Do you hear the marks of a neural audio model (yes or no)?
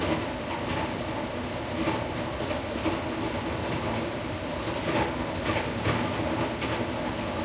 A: no